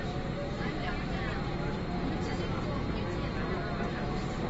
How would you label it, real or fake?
real